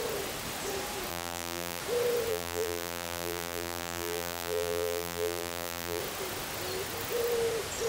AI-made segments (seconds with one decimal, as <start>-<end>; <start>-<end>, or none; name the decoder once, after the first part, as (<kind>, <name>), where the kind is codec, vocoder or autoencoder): 1.1-1.8 (vocoder, BigVGAN v2); 2.3-6.0